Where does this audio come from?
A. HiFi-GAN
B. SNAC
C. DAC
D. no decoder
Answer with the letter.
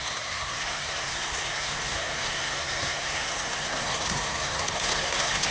B